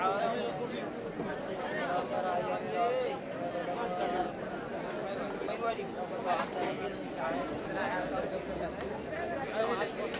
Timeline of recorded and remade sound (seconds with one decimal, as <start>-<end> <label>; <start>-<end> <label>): 0.0-5.4 recorded; 5.4-6.4 remade; 6.4-7.8 recorded; 7.8-8.3 remade; 8.3-10.2 recorded